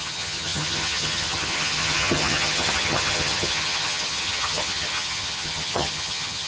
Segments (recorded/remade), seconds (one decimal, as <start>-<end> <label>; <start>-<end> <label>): 0.0-6.5 remade